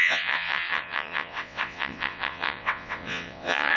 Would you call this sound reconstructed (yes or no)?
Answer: yes